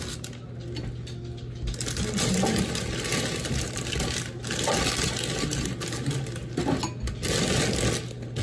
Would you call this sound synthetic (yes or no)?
no